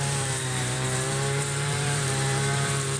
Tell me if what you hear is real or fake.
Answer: fake